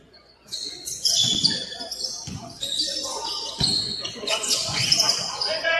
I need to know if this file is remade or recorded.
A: remade